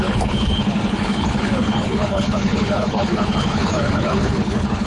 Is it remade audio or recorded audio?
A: remade